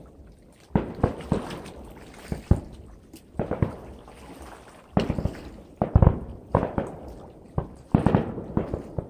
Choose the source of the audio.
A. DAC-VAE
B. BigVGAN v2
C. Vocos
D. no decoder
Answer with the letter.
D